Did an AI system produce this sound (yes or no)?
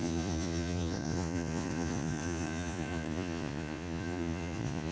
yes